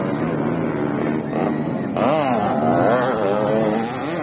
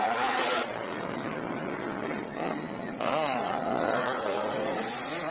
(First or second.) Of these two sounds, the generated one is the second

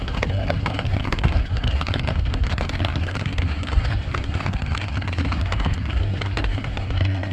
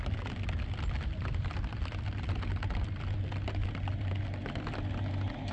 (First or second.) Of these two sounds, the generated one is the first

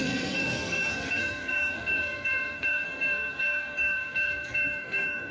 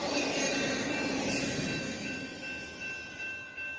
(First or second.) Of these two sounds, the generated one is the first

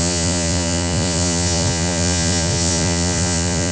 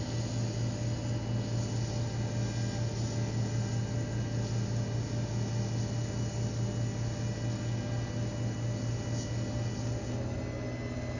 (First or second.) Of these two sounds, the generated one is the first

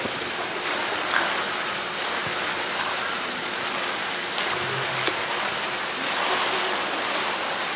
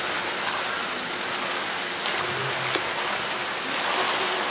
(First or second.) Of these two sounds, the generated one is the first